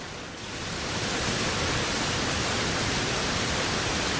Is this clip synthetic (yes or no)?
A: no